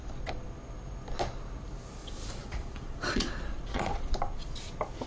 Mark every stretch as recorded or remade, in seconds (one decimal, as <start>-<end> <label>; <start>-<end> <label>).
0.0-2.0 recorded; 2.0-4.1 remade; 4.1-5.1 recorded